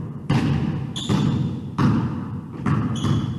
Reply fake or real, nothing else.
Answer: real